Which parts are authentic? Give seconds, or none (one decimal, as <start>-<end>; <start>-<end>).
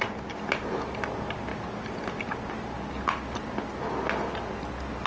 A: 0.0-5.1